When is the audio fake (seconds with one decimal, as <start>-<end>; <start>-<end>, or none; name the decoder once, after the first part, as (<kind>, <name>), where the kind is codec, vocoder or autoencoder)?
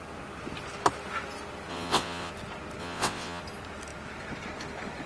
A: 1.7-2.3 (vocoder, WaveNeXt); 2.8-3.4